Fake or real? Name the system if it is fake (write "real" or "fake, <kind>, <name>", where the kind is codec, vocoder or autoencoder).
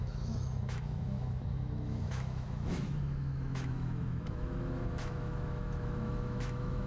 fake, autoencoder, DAC-VAE